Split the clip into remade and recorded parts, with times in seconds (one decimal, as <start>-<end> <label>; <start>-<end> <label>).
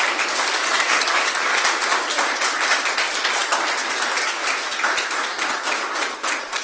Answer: 0.0-1.5 remade; 1.5-3.9 recorded; 3.9-4.4 remade; 4.4-6.6 recorded